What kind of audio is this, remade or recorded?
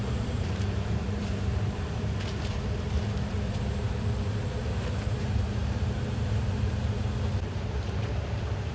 remade